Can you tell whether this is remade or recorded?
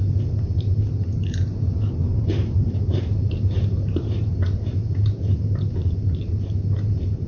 remade